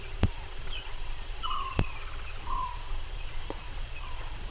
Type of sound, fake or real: fake